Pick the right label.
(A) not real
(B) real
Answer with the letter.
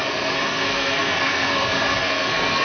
A